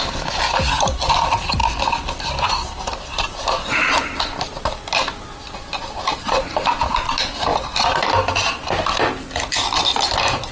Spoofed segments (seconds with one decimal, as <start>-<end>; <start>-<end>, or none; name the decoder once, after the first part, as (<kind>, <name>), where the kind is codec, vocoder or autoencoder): none